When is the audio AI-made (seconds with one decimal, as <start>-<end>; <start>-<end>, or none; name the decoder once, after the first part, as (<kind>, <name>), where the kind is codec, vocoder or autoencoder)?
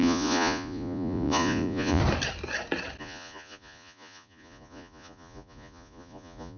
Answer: 0.0-2.0 (vocoder, Vocos); 3.0-6.6